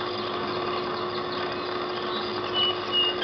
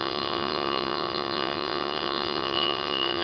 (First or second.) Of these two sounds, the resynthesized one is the second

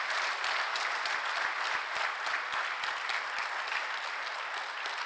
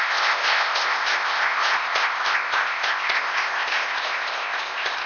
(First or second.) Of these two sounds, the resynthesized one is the second